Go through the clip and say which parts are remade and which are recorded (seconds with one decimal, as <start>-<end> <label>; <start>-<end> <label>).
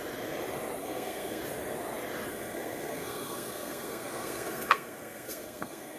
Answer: 0.0-0.8 recorded; 0.8-1.4 remade; 1.4-2.3 recorded; 2.3-6.0 remade